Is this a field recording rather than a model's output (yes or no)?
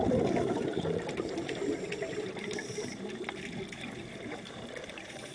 no